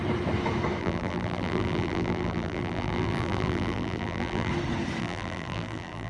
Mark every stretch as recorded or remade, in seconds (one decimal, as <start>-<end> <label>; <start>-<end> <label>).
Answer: 0.0-0.8 recorded; 0.8-4.5 remade; 4.5-5.0 recorded; 5.0-6.1 remade